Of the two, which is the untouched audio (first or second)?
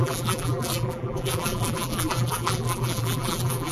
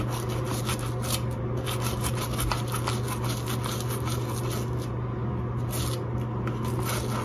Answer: second